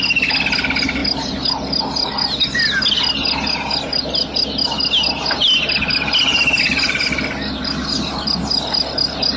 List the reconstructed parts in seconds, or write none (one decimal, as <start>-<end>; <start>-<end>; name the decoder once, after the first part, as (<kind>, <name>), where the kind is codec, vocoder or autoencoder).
none